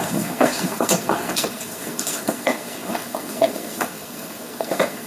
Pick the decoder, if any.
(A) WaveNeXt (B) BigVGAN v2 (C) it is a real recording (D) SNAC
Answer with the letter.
D